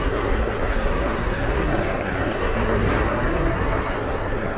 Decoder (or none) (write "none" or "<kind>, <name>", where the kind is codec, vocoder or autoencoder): codec, SNAC